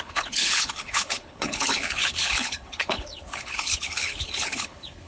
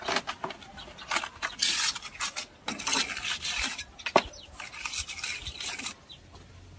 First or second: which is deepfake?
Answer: first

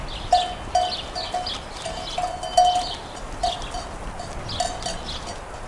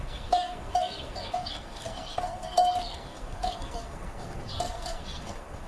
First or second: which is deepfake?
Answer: second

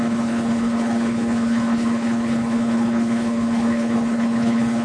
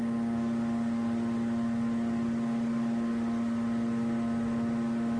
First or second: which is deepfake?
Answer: first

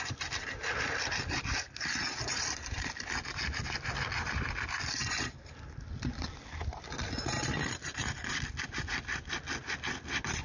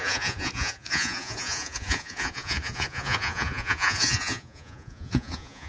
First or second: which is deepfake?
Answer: second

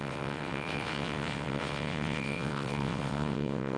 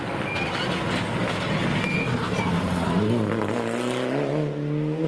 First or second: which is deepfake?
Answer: first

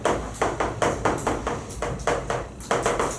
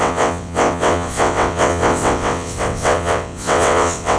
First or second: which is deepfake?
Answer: second